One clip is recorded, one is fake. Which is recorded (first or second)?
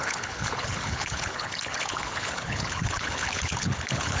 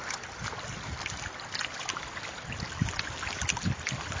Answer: second